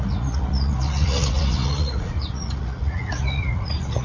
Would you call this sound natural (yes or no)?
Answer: no